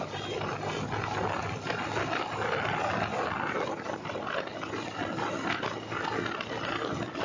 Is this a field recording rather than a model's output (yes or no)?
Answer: yes